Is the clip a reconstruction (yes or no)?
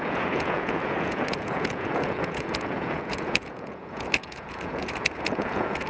yes